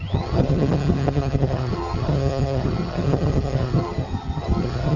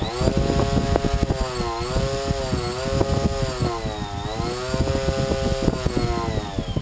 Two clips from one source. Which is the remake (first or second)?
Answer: first